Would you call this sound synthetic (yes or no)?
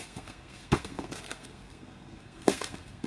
yes